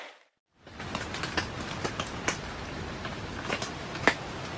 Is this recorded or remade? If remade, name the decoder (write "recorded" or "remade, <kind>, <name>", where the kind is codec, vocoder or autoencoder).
recorded